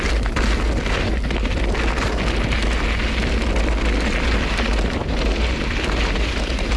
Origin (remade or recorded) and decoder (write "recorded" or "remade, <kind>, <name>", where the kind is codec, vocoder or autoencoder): recorded